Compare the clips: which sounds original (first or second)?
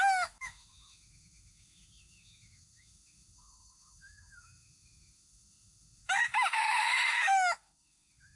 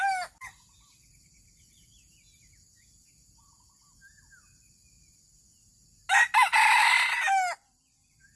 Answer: second